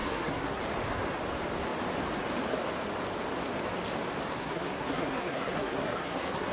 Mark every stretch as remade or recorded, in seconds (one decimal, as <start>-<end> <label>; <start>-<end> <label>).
0.0-0.6 remade; 0.6-4.3 recorded; 4.3-6.5 remade